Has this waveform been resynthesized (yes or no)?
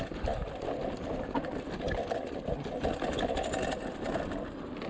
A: no